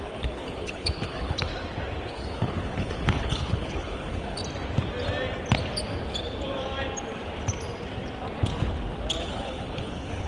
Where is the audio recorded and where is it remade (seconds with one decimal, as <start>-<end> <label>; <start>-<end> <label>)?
0.0-1.5 remade; 1.5-2.1 recorded; 2.1-4.4 remade; 4.4-9.2 recorded; 9.2-10.3 remade